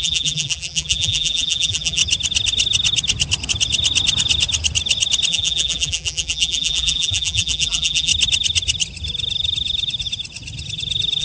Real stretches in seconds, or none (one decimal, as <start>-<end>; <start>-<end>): 2.0-5.3; 8.1-11.2

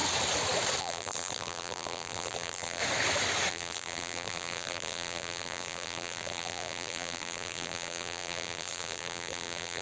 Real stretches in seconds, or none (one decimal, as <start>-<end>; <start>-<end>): 0.0-0.8; 2.8-3.5

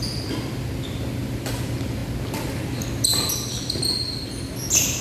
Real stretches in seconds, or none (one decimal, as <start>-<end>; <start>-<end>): 0.0-5.0